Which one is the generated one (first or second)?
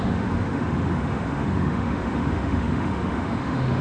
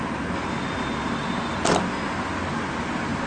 first